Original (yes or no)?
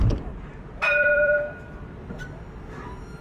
no